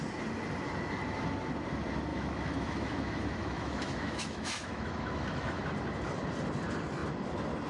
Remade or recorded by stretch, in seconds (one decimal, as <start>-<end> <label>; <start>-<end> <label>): 0.0-2.1 recorded; 2.1-5.6 remade; 5.6-7.7 recorded